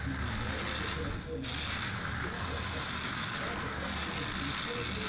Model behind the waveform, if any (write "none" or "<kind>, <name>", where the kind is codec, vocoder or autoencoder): none